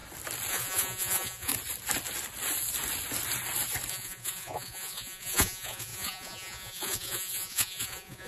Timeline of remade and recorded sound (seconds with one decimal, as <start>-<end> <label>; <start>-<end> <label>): 0.0-0.5 recorded; 0.5-1.5 remade; 1.5-3.9 recorded; 3.9-8.3 remade